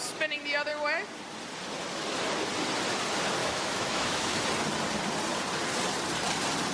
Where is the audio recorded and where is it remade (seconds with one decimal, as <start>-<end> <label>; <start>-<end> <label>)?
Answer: 0.0-3.4 recorded; 3.4-4.3 remade; 4.3-6.7 recorded